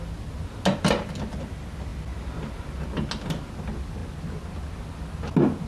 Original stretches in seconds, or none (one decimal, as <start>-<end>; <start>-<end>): 0.0-5.7